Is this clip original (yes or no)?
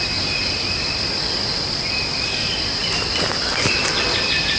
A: yes